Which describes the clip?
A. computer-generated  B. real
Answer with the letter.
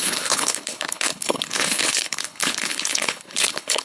A